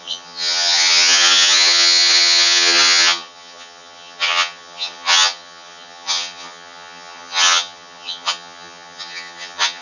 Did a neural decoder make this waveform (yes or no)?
yes